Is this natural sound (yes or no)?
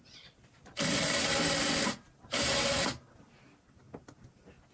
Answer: yes